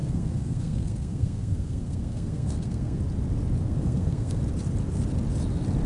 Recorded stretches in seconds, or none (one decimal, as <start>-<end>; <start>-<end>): 3.0-3.6; 4.4-5.9